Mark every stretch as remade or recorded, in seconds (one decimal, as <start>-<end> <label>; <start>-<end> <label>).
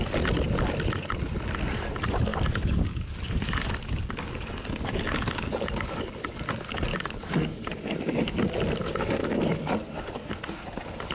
0.0-2.3 recorded; 2.3-6.4 remade; 6.4-6.9 recorded; 6.9-7.7 remade; 7.7-9.2 recorded; 9.2-10.3 remade; 10.3-11.1 recorded